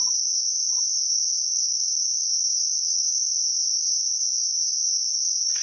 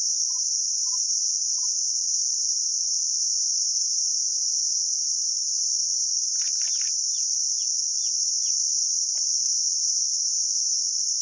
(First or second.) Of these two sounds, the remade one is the first